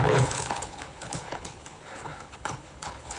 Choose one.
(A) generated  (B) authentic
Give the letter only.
A